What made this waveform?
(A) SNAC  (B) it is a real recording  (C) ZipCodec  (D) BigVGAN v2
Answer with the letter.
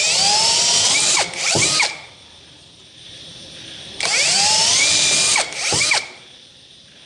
D